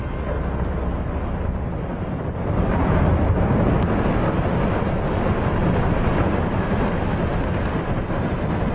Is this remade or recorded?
recorded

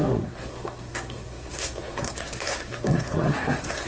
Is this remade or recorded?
remade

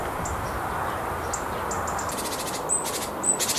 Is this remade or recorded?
recorded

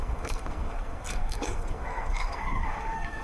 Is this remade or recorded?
remade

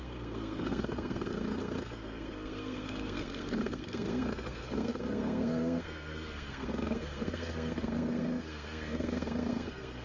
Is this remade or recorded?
remade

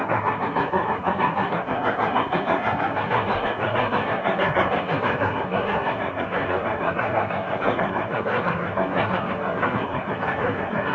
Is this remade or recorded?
remade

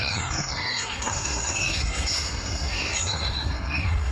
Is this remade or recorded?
remade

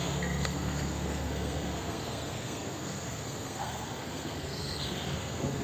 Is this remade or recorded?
remade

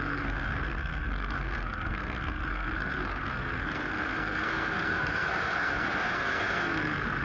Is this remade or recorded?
remade